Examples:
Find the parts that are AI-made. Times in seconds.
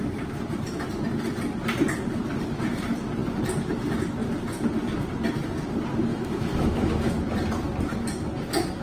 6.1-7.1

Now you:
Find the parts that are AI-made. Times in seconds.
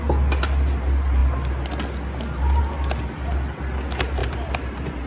4.2-5.1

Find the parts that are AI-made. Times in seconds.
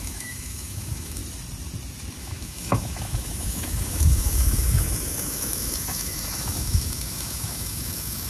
0.0-1.2; 2.2-8.3